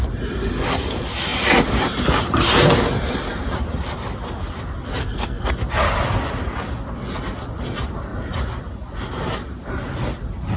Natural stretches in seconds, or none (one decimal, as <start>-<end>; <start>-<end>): 0.0-5.0; 5.5-10.6